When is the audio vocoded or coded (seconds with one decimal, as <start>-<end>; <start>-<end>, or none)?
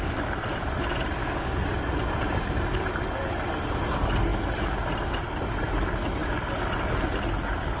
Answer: 1.2-1.8